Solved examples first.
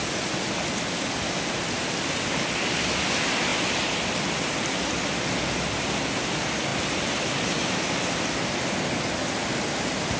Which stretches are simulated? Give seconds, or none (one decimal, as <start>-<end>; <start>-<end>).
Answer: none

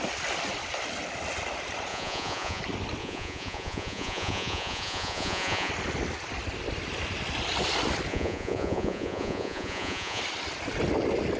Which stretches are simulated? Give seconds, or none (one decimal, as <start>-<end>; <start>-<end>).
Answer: 1.9-2.6; 3.0-5.7; 8.1-10.2

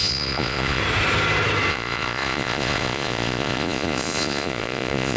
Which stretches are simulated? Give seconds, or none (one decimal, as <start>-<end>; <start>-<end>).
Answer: 0.0-0.8; 1.7-5.2

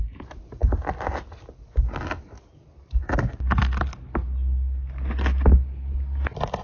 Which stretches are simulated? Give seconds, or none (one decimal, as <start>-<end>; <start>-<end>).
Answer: none

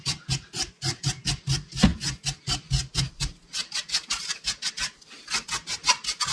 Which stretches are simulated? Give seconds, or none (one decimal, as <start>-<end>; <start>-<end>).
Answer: none

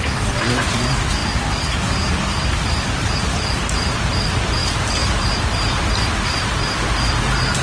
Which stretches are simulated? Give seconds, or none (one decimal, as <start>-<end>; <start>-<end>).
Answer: 0.0-1.2; 3.2-7.6

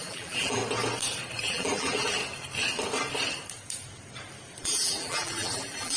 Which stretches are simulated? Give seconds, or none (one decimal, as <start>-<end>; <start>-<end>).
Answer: 0.0-0.6; 1.4-2.2; 4.6-6.0

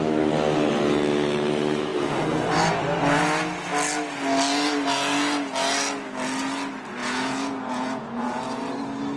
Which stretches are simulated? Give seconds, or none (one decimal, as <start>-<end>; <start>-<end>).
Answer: 7.0-8.4